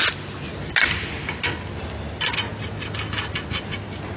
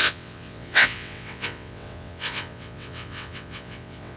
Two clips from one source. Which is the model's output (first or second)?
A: second